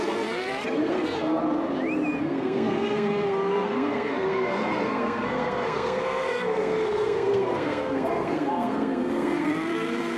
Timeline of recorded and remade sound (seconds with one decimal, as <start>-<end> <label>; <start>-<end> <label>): 0.0-1.4 remade; 1.4-2.2 recorded; 2.2-10.2 remade